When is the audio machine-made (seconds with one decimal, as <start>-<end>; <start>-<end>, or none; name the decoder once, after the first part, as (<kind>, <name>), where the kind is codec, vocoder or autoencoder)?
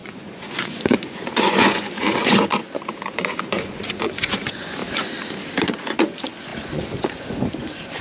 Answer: 0.0-4.8 (vocoder, Vocos); 5.6-8.0